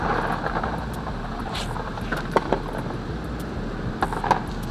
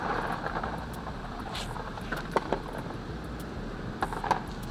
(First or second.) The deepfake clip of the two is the second